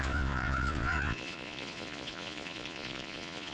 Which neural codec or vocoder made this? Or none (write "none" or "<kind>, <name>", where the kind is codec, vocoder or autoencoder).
vocoder, Vocos